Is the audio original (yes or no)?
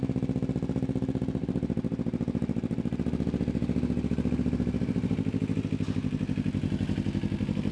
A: yes